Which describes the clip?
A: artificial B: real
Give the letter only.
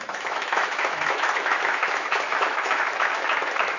A